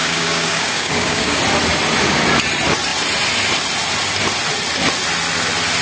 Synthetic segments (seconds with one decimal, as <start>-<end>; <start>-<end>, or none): 0.0-1.4